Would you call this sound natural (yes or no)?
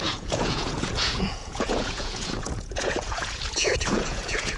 no